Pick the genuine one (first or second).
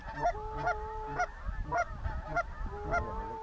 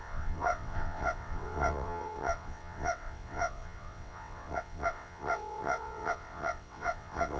first